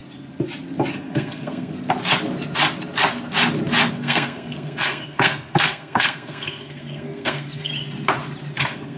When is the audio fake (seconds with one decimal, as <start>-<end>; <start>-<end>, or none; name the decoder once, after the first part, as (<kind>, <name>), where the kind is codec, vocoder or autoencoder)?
0.9-1.7 (codec, SNAC); 3.9-7.7; 8.6-9.0